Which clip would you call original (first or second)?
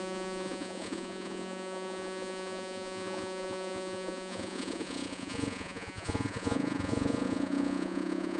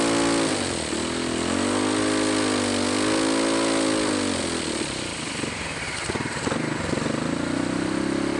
second